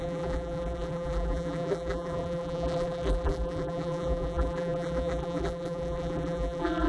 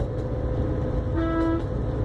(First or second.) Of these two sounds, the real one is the second